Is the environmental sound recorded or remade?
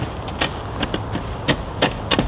recorded